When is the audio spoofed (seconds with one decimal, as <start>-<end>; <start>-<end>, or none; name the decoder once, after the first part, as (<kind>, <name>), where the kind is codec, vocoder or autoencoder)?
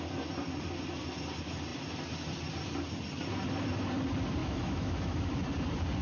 4.4-5.3 (autoencoder, DAC-VAE)